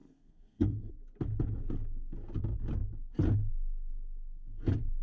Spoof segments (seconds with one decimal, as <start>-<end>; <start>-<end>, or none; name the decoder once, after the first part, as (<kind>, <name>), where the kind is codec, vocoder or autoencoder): 0.0-0.9 (codec, SNAC)